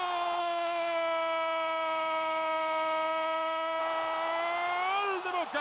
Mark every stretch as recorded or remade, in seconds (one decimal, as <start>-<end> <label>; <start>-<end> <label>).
0.0-0.4 recorded; 0.4-3.8 remade; 3.8-5.6 recorded